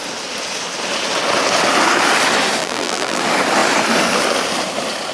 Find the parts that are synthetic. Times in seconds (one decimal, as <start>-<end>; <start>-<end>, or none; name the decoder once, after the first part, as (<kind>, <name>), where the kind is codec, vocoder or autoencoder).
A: 2.6-3.2 (vocoder, BigVGAN v2)